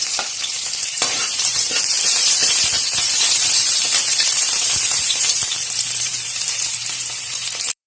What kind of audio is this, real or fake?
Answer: fake